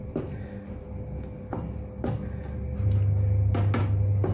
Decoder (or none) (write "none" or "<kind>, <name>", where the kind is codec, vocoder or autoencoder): none